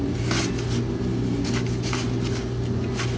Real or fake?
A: real